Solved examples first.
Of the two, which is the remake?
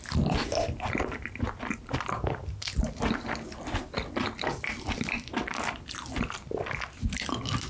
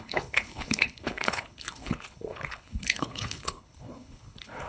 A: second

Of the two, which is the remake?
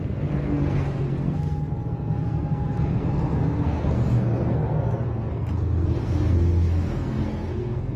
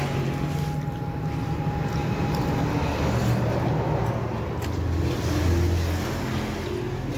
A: first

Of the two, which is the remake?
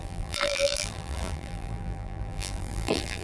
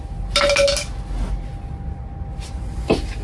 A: first